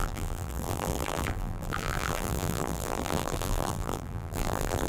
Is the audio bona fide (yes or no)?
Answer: no